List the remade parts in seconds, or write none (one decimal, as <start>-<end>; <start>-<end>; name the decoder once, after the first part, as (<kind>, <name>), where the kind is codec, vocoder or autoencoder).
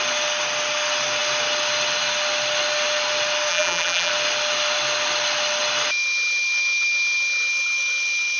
3.5-4.1 (vocoder, BigVGAN v2)